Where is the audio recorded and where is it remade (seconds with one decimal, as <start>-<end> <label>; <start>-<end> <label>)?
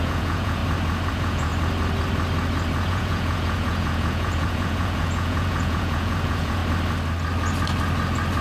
0.0-0.6 remade; 0.6-1.1 recorded; 1.1-1.5 remade; 1.5-2.9 recorded; 2.9-6.6 remade; 6.6-8.4 recorded